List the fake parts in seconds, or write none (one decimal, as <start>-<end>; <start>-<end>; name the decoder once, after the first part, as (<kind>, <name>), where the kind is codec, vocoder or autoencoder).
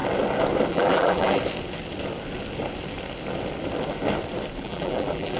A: 0.7-1.4 (vocoder, BigVGAN v2); 4.6-5.4